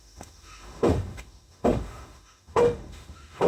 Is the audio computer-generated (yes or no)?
yes